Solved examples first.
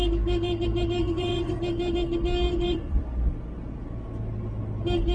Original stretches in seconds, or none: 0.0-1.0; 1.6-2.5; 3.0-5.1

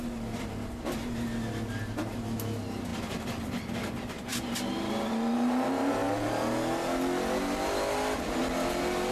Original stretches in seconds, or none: 0.0-9.1

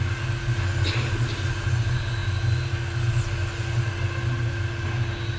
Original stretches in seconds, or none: 0.0-5.4

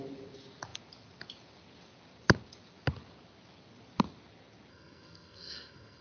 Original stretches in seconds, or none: 0.0-4.7

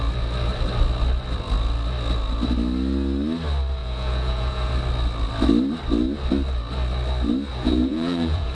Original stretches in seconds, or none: 0.0-3.8; 4.7-7.5

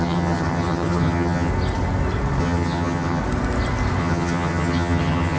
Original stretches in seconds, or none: 1.5-2.4; 3.2-4.0